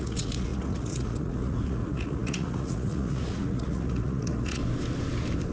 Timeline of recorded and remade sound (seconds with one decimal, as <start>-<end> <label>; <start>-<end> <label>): 0.0-4.6 remade; 4.6-5.5 recorded